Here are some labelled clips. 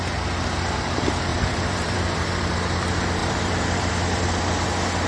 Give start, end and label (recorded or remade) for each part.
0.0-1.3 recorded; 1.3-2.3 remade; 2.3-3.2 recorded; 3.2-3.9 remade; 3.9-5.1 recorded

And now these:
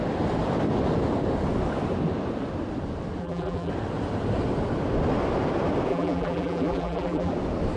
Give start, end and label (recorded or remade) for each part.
0.0-3.2 recorded; 3.2-3.7 remade; 3.7-5.9 recorded; 5.9-7.3 remade; 7.3-7.8 recorded

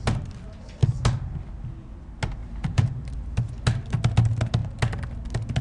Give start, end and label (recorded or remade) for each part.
0.0-2.4 recorded; 2.4-3.5 remade; 3.5-5.6 recorded

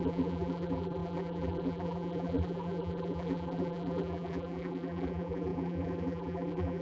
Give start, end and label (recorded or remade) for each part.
0.0-6.8 remade

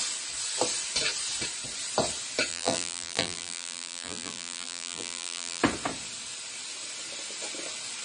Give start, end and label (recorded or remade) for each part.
0.0-2.5 recorded; 2.5-5.6 remade; 5.6-8.0 recorded

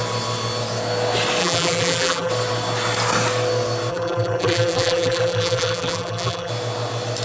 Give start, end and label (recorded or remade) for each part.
0.0-1.4 recorded; 1.4-2.3 remade; 2.3-3.9 recorded; 3.9-6.5 remade; 6.5-7.2 recorded